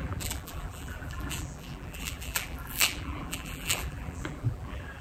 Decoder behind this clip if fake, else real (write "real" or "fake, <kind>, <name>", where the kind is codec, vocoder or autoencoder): fake, vocoder, BigVGAN v2